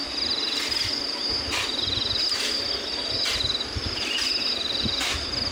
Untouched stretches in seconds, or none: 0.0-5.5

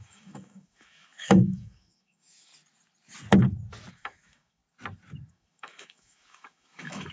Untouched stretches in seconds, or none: 2.5-3.9; 4.6-5.3

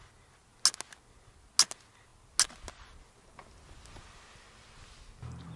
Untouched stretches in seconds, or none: 0.0-5.6